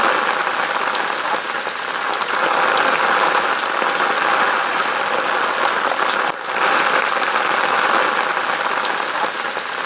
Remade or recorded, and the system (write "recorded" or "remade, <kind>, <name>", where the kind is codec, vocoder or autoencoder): recorded